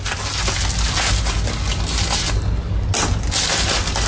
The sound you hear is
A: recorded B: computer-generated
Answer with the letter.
A